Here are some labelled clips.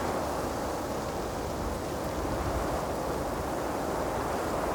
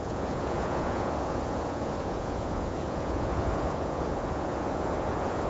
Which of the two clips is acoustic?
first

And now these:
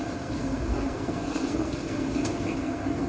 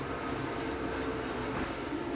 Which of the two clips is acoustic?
second